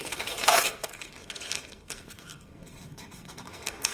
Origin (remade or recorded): remade